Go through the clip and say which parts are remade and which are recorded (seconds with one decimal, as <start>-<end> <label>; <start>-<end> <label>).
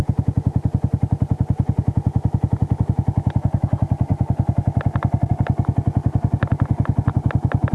0.0-7.7 recorded